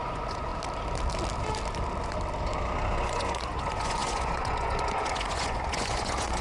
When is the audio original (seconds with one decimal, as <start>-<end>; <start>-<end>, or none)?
0.5-2.9